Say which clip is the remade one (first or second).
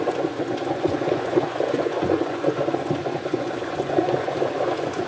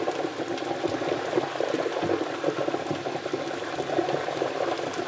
first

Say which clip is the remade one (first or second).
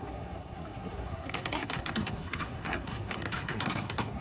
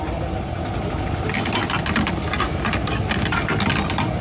first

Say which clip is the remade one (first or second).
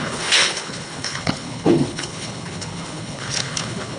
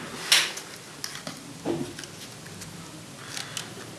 first